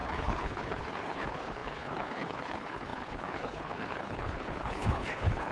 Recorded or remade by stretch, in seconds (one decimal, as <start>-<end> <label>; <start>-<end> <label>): 0.0-5.5 remade